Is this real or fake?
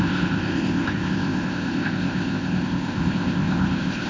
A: fake